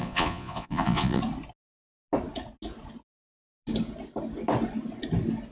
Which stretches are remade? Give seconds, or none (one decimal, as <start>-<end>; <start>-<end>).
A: 0.0-1.2